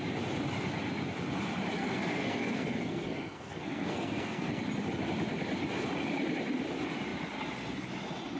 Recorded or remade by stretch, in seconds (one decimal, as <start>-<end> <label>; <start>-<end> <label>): 0.0-1.8 recorded; 1.8-4.6 remade; 4.6-8.4 recorded